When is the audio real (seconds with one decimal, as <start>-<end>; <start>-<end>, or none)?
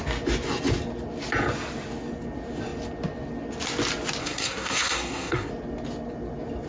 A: 0.0-4.2; 5.5-6.7